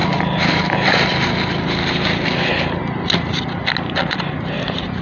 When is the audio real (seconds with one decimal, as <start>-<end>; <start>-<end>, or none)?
0.0-5.0